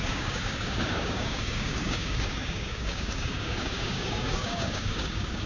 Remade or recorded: remade